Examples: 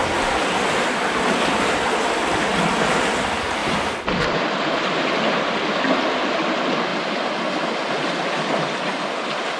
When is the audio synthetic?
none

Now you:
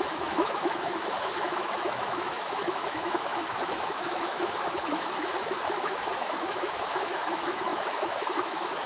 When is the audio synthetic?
0.0-8.9 (autoencoder, DAC-VAE)

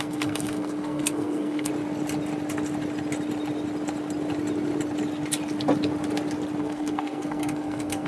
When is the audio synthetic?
0.0-1.7 (codec, SNAC); 6.6-8.1